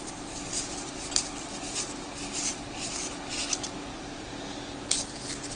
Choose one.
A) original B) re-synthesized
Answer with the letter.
A